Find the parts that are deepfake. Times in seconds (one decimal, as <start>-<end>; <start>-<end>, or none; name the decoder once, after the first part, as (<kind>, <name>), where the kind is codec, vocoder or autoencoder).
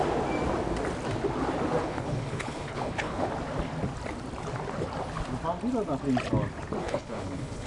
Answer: 1.8-3.3 (codec, HILCodec); 6.8-7.7